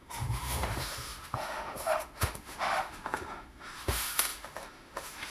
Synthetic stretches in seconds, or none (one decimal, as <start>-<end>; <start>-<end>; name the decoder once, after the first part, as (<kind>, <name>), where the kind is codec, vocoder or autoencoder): 0.0-5.3 (autoencoder, DAC-VAE)